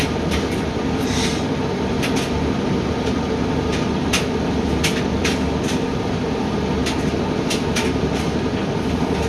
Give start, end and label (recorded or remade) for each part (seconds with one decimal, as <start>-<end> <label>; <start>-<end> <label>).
0.0-6.8 remade; 6.8-7.4 recorded; 7.4-9.3 remade